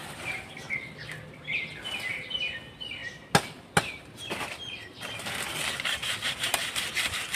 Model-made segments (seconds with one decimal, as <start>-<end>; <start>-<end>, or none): 0.0-0.5